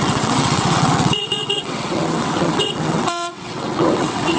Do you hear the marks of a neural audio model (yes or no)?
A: yes